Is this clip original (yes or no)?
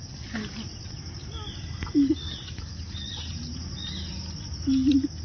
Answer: yes